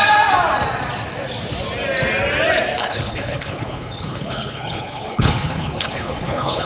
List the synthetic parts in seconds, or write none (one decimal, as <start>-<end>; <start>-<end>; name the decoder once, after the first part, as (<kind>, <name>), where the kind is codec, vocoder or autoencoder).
2.8-6.7 (codec, HILCodec)